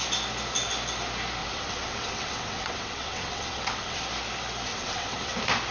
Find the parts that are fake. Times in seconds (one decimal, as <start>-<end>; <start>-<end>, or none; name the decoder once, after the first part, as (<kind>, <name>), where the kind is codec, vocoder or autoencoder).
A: 1.4-4.0 (vocoder, WaveNeXt); 4.7-5.3